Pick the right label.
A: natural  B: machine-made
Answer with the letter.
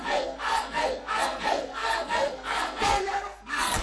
B